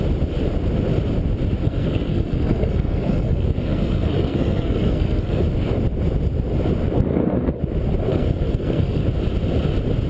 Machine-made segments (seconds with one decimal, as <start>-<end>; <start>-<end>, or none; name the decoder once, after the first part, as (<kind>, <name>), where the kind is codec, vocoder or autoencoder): 1.6-5.4 (codec, SNAC); 7.1-7.6; 8.1-9.0